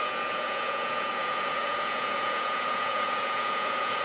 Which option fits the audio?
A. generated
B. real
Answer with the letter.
A